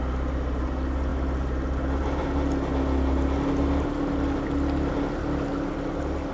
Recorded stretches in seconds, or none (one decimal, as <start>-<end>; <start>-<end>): 0.0-6.3